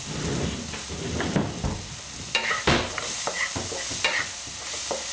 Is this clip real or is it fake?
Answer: real